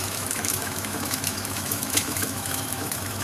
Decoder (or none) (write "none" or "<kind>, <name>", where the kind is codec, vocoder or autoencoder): autoencoder, DAC-VAE